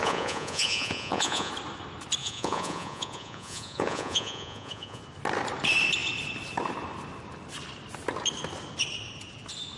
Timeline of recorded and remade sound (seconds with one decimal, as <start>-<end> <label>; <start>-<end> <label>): 0.0-1.5 remade; 1.5-2.2 recorded; 2.2-5.0 remade; 5.0-9.8 recorded